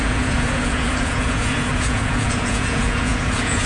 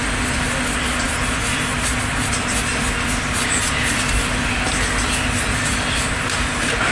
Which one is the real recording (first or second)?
second